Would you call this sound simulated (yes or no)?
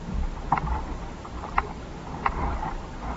yes